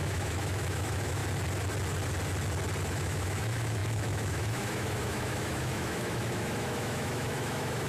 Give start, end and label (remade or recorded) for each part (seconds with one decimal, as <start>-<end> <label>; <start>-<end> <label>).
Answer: 0.0-1.2 remade; 1.2-2.9 recorded; 2.9-7.9 remade